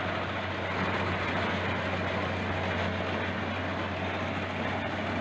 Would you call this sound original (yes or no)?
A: yes